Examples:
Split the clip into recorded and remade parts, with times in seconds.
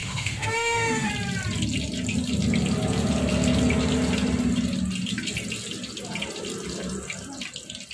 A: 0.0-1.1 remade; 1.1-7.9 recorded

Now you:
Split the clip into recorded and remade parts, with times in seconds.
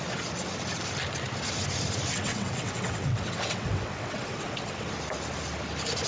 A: 0.0-2.1 recorded; 2.1-4.9 remade; 4.9-6.1 recorded